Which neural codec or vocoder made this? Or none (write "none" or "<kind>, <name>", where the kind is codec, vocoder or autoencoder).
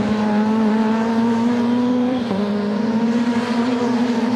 vocoder, BigVGAN v2